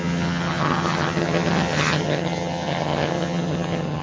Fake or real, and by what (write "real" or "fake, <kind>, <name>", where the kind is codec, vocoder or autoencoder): fake, vocoder, HiFi-GAN